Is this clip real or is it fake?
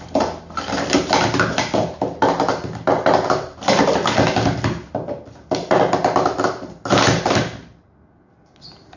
real